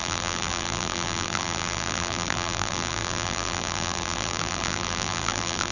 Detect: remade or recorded remade